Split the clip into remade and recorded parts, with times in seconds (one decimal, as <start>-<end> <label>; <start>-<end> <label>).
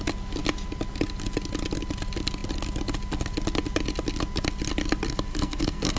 0.0-5.3 recorded; 5.3-6.0 remade